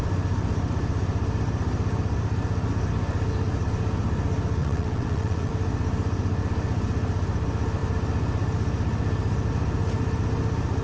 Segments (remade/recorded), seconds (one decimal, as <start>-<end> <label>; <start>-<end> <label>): 0.0-4.6 recorded; 4.6-5.5 remade; 5.5-10.8 recorded